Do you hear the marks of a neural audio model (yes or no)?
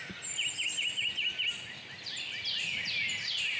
no